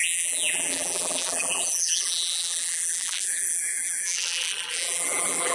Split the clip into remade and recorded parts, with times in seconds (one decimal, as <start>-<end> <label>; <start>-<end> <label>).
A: 0.0-5.5 remade